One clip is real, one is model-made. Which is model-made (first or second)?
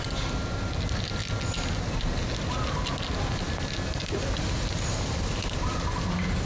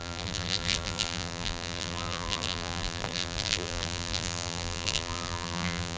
second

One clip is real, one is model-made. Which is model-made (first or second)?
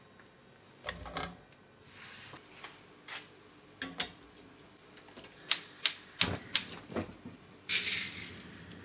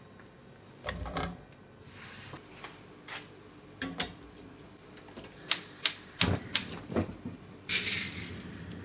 second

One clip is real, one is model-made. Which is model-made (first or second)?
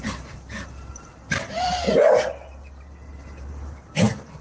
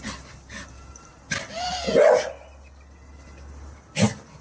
first